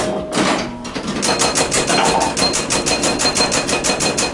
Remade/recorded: recorded